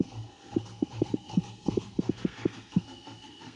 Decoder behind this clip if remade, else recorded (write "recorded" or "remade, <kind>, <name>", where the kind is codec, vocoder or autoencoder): remade, codec, SNAC